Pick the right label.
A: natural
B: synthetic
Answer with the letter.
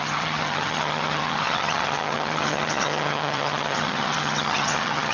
B